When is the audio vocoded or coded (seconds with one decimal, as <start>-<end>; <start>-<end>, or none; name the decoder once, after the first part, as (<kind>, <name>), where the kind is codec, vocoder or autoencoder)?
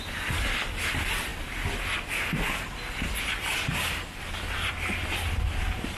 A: 0.0-1.3 (vocoder, BigVGAN v2); 4.7-6.0